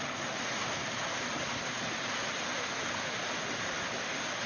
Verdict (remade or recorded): recorded